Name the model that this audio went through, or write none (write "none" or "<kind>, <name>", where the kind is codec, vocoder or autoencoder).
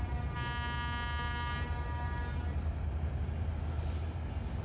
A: none